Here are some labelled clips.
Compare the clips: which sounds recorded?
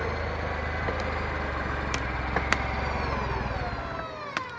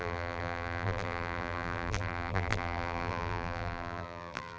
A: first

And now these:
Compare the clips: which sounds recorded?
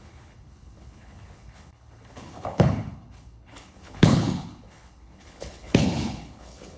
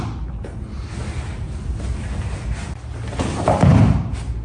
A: second